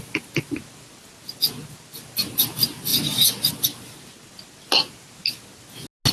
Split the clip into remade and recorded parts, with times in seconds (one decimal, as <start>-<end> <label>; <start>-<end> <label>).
0.0-6.1 recorded